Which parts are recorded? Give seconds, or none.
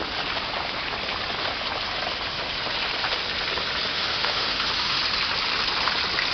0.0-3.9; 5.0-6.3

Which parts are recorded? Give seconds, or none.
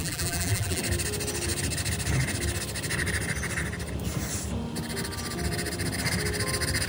0.8-6.9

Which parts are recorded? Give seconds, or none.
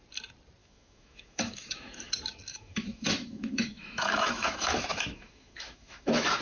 0.0-0.6; 2.1-2.5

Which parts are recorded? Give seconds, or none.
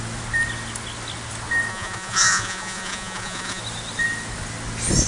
0.0-1.7; 3.6-5.1